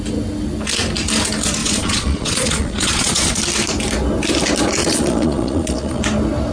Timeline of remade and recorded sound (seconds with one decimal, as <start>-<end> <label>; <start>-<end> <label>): 0.0-1.6 recorded; 1.6-3.4 remade; 3.4-4.8 recorded; 4.8-6.0 remade; 6.0-6.5 recorded